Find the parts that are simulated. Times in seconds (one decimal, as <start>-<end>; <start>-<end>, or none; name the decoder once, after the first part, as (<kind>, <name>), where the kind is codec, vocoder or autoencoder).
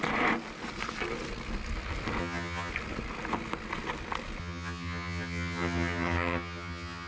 2.2-2.7 (vocoder, HiFi-GAN); 4.4-7.1